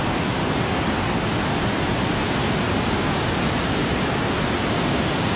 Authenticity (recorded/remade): recorded